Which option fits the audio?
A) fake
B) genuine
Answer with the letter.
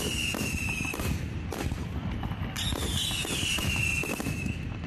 B